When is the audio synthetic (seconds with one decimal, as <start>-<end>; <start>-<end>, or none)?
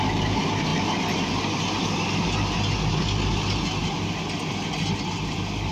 none